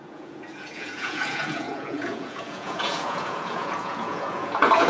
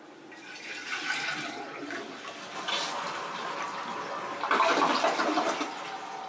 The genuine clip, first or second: second